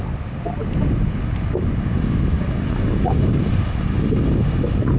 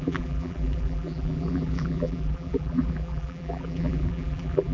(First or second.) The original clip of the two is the first